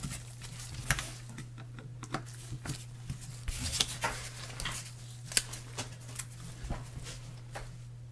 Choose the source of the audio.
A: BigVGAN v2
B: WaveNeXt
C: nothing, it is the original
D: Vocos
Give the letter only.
C